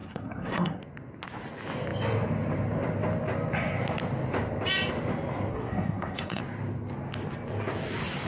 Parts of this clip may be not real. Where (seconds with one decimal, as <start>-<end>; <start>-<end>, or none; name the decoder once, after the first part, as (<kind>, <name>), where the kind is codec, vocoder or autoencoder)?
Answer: 0.0-0.8 (codec, SNAC); 5.5-6.4